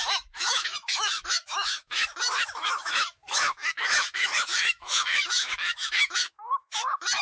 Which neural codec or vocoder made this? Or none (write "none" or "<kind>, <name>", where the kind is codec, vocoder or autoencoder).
autoencoder, DAC-VAE